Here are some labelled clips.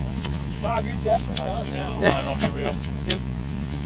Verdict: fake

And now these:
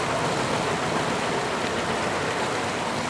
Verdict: real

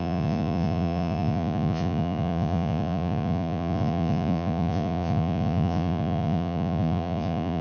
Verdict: fake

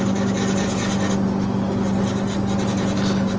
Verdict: real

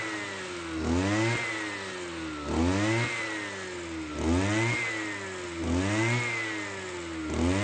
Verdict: real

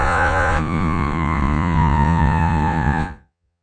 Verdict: fake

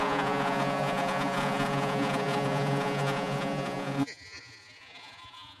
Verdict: fake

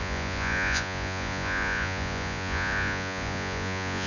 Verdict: fake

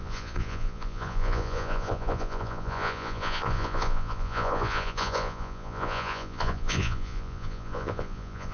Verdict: fake